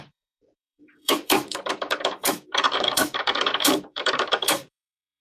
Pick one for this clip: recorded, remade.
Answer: remade